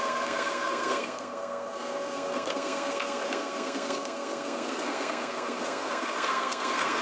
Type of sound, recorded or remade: remade